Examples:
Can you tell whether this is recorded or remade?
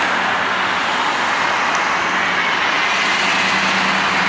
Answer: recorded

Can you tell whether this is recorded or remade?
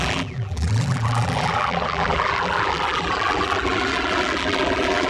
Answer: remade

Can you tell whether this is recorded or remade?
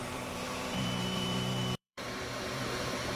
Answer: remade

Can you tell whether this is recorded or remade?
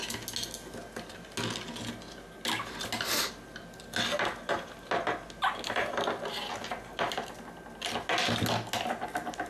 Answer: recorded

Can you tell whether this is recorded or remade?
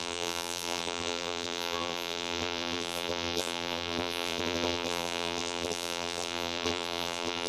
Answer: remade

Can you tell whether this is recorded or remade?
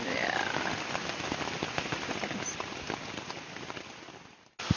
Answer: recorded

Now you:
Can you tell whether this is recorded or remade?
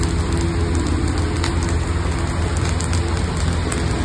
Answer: recorded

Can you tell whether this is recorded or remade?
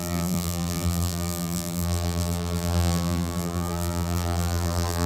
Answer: remade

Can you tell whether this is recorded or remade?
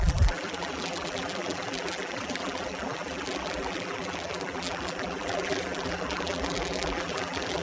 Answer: remade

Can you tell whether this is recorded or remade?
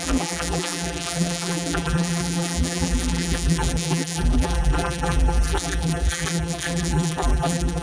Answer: remade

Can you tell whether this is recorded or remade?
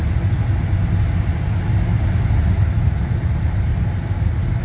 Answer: recorded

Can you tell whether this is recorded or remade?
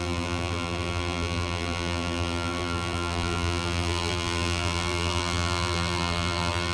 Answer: remade